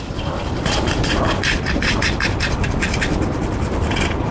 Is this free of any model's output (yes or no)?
yes